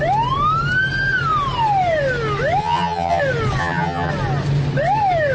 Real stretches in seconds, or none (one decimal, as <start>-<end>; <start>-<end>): 0.0-2.6; 3.2-3.6; 4.1-5.3